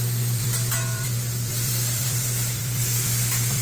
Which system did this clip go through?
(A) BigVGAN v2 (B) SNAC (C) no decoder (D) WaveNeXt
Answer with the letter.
A